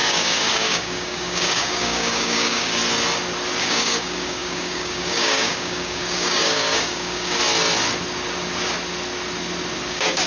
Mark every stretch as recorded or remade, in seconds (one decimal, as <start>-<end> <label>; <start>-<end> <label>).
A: 0.0-2.8 remade; 2.8-3.6 recorded; 3.6-7.4 remade; 7.4-9.9 recorded; 9.9-10.3 remade